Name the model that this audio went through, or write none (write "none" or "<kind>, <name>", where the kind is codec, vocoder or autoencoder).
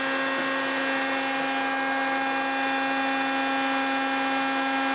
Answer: none